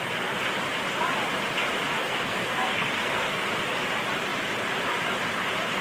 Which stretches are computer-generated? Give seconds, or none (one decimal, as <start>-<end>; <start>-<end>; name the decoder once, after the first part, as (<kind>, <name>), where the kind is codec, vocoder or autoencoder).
2.0-3.4 (codec, SNAC)